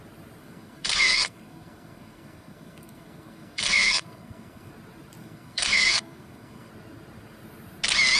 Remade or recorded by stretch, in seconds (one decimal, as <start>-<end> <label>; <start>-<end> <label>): 0.0-0.4 recorded; 0.4-4.7 remade; 4.7-5.2 recorded; 5.2-6.7 remade; 6.7-8.2 recorded